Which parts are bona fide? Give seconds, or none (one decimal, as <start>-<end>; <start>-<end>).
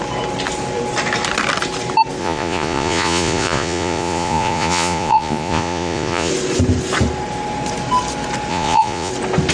0.0-2.2; 6.3-8.5; 9.1-9.5